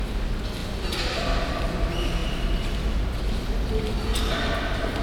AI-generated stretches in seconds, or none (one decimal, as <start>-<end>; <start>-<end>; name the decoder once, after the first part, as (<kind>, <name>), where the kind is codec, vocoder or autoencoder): 0.6-1.6 (vocoder, BigVGAN v2)